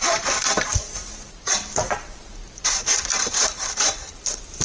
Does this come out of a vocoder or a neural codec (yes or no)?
yes